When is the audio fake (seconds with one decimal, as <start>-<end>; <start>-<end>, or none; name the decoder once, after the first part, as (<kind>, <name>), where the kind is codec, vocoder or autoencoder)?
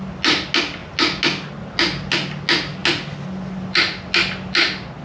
none